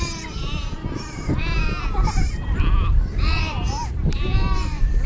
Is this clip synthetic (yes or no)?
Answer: no